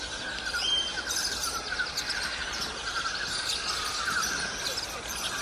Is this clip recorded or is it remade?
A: recorded